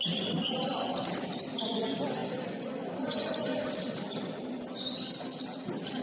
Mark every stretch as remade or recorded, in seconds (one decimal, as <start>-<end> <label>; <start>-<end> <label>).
0.0-2.2 recorded; 2.2-6.0 remade